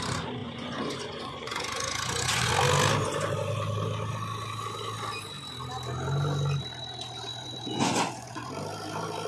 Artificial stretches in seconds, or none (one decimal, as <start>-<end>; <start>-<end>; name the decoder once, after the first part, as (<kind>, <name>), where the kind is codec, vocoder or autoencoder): 0.4-2.5 (vocoder, Vocos); 7.3-8.5